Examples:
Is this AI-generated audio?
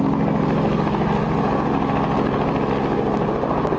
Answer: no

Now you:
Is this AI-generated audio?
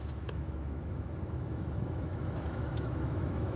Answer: yes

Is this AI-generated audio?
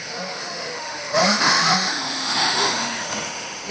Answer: yes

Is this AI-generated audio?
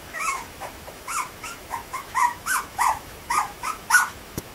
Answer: yes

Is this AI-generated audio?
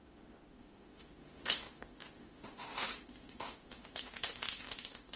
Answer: yes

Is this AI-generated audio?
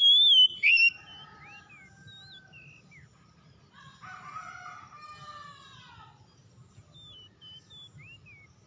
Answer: no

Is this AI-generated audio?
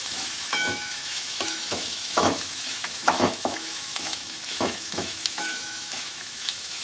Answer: yes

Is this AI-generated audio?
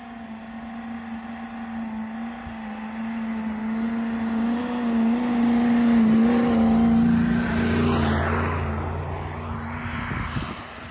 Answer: no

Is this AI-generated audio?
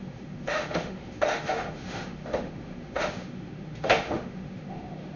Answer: yes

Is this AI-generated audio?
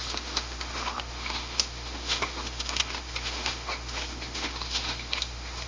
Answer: yes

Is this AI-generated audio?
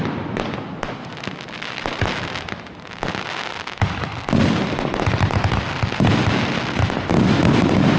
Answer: no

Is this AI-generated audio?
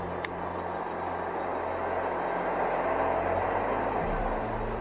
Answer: no